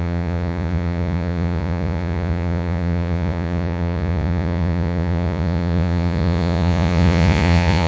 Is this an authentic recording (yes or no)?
no